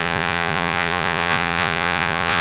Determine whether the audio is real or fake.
fake